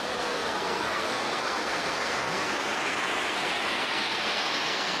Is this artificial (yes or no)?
yes